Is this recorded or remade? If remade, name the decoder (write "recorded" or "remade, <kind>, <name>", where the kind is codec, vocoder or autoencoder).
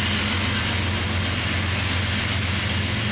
recorded